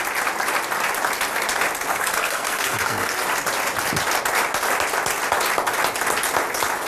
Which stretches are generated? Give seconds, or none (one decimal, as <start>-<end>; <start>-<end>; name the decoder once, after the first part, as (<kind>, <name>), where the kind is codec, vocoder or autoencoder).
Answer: 1.9-3.1 (codec, SNAC)